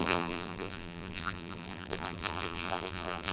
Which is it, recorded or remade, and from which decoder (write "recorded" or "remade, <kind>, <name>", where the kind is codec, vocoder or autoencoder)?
remade, vocoder, BigVGAN v2